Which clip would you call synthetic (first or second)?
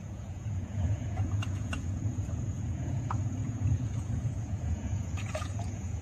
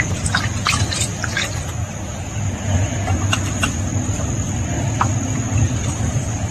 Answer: first